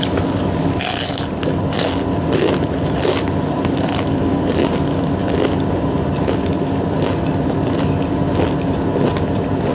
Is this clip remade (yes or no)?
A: no